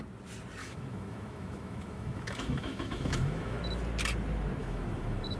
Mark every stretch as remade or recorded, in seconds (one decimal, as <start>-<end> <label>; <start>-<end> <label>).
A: 0.0-0.6 recorded; 0.6-3.6 remade; 3.6-4.6 recorded; 4.6-5.4 remade